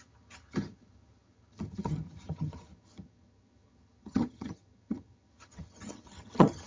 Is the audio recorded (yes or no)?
no